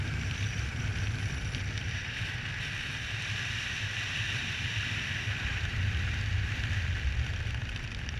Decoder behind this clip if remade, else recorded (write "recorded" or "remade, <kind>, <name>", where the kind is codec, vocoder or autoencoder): remade, vocoder, BigVGAN v2